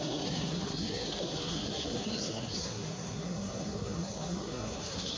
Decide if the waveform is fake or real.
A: fake